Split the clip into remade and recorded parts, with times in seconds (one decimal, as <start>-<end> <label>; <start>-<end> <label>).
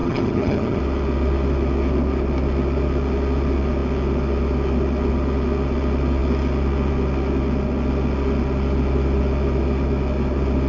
0.0-0.8 remade; 0.8-10.7 recorded